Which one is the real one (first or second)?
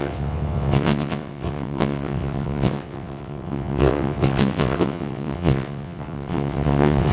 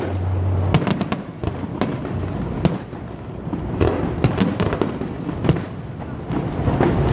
second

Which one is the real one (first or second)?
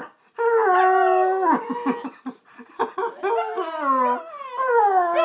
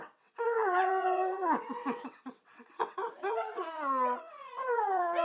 first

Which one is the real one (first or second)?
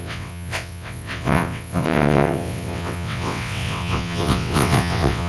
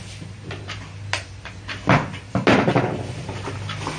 second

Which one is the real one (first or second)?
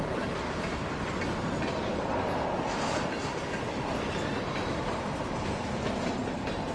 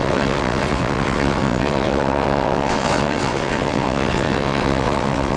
first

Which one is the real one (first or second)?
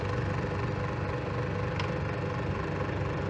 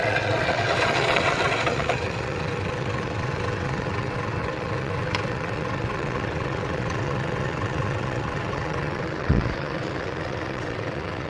first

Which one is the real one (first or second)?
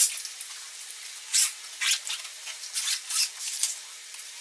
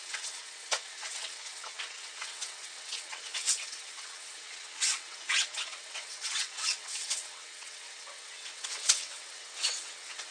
first